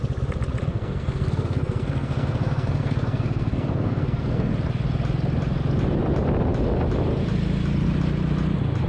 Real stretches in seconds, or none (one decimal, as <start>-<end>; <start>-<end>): 0.0-0.7; 4.5-8.9